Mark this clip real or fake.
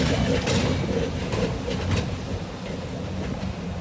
real